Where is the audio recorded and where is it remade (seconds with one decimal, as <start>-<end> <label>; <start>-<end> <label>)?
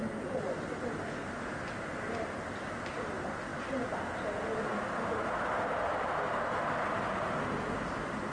0.0-3.5 recorded; 3.5-4.2 remade; 4.2-8.3 recorded